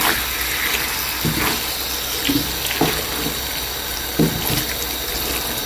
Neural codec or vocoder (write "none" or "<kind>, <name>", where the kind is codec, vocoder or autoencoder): none